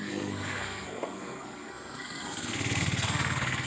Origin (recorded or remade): remade